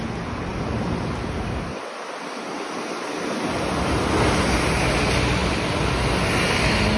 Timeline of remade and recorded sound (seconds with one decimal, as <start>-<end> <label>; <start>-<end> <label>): 0.0-7.0 recorded